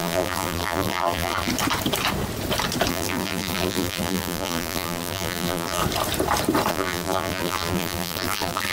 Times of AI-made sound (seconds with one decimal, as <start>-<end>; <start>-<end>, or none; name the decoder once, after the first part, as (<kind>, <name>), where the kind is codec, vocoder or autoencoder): 0.0-1.5 (vocoder, BigVGAN v2); 2.9-5.8; 6.7-8.7